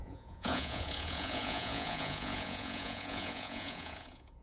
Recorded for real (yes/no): no